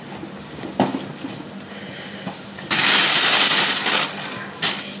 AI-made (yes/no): no